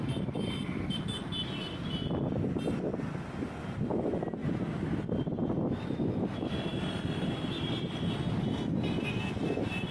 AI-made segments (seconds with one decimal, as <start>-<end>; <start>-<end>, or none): 4.4-5.1